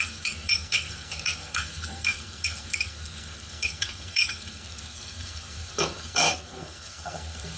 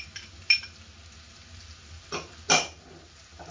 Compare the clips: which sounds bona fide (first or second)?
second